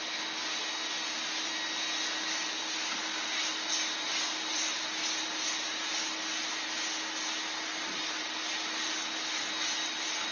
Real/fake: real